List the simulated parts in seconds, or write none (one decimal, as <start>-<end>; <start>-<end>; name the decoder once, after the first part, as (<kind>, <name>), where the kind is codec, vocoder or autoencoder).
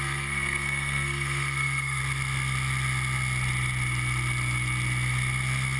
0.0-2.0 (codec, SNAC)